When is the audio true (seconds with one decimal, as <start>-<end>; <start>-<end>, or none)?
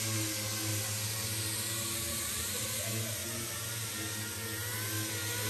0.0-5.5